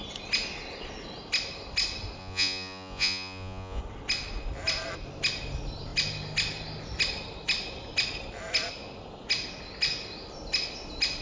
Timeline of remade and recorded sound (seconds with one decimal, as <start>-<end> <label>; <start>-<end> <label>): 0.0-2.2 recorded; 2.2-3.8 remade; 3.8-11.2 recorded